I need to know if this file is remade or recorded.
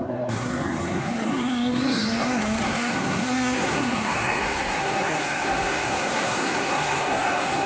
remade